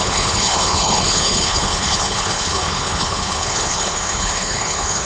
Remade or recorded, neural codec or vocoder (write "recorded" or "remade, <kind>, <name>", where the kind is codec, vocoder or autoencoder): remade, codec, HILCodec